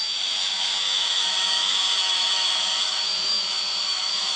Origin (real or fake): fake